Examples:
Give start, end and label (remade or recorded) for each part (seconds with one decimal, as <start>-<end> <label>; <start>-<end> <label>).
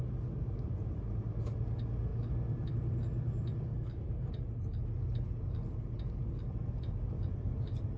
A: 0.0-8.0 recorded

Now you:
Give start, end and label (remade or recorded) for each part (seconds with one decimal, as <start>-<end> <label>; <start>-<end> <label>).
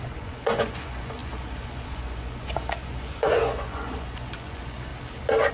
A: 0.0-4.9 remade; 4.9-5.5 recorded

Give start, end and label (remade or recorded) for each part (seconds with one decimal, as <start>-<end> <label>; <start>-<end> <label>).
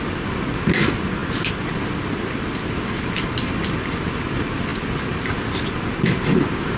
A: 0.0-6.8 recorded